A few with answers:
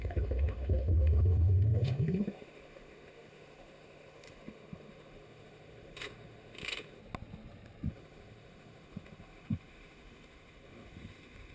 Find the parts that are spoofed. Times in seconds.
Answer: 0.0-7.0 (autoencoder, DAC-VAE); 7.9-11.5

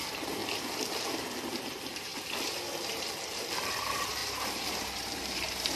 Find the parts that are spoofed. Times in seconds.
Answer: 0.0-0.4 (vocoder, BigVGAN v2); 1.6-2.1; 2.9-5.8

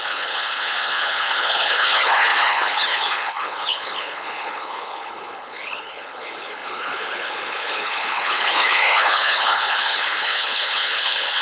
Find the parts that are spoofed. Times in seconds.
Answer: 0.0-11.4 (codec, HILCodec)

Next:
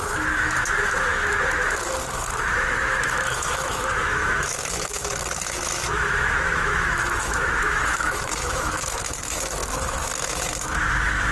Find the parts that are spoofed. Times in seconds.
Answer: 0.0-11.3 (autoencoder, DAC-VAE)

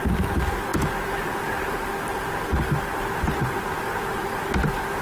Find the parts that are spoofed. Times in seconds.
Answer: none